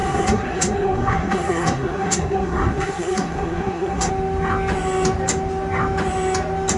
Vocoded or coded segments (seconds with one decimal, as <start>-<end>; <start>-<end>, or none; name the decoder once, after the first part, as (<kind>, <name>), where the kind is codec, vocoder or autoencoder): 0.0-4.1 (codec, SNAC)